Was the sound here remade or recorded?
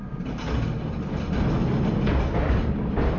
recorded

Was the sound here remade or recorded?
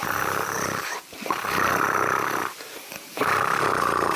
recorded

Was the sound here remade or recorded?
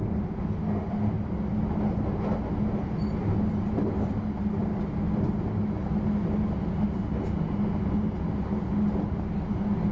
recorded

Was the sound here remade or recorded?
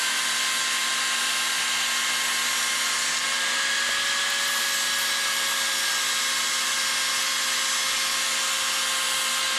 recorded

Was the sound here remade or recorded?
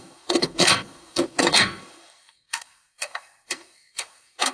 remade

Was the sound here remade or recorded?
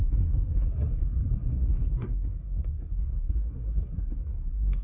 remade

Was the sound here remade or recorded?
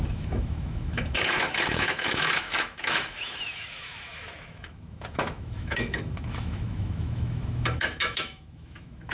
remade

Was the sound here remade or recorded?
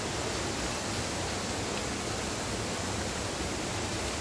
recorded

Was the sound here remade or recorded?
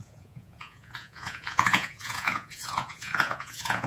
remade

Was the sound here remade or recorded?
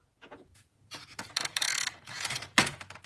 remade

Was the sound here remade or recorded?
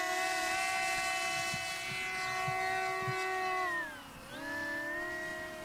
recorded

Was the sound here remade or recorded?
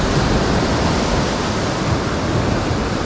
recorded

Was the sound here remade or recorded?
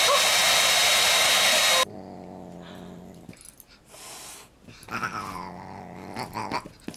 recorded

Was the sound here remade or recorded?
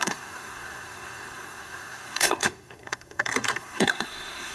remade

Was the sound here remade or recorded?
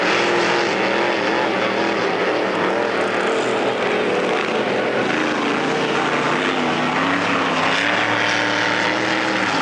recorded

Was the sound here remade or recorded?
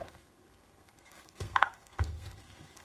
remade